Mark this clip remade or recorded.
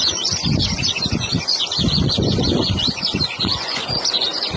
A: remade